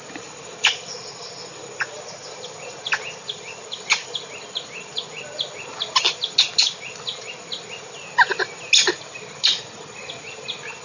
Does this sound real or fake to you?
real